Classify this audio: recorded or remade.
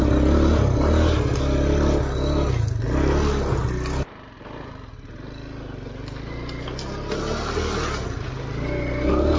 recorded